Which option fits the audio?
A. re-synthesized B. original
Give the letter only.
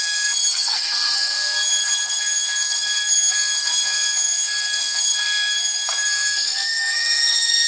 A